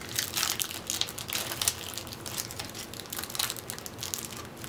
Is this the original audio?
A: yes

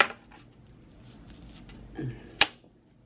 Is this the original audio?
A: yes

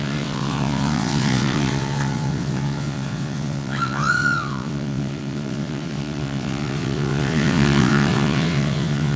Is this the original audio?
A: no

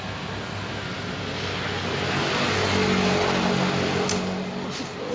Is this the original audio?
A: yes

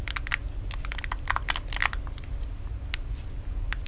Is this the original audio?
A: yes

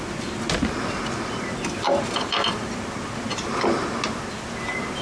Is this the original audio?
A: yes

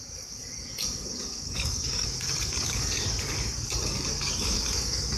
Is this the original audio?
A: no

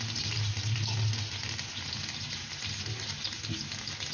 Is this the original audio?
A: yes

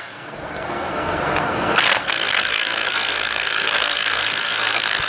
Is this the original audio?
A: no